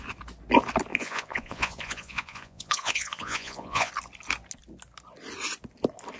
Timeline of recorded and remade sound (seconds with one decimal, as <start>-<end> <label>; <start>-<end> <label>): 0.0-0.9 recorded; 0.9-3.9 remade; 3.9-6.2 recorded